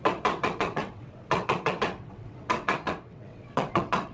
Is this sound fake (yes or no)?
yes